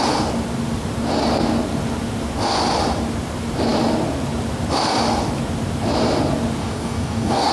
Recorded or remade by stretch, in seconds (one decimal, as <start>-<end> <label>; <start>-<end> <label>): 0.0-6.6 recorded; 6.6-7.5 remade